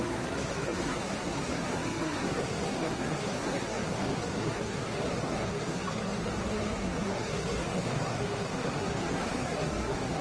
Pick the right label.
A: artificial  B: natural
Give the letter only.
A